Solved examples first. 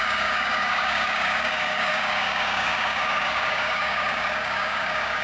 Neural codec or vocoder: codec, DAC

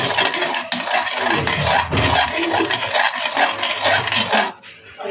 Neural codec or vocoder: none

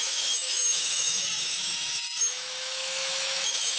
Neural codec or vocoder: autoencoder, DAC-VAE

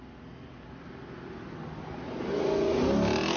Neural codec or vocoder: none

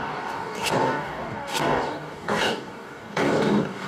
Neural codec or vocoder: codec, DAC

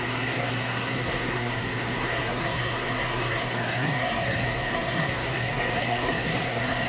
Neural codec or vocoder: codec, SNAC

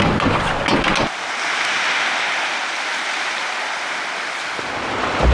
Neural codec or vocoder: none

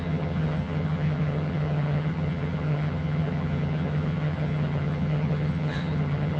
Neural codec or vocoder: vocoder, HiFi-GAN